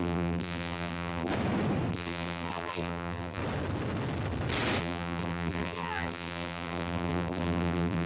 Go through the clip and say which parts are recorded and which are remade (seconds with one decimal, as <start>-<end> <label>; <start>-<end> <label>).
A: 0.0-1.3 remade; 1.3-1.9 recorded; 1.9-3.4 remade; 3.4-4.8 recorded; 4.8-8.1 remade